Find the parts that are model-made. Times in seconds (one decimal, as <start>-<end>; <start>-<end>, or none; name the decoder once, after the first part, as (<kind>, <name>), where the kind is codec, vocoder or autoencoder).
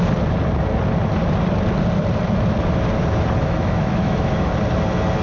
3.4-4.5 (autoencoder, DAC-VAE)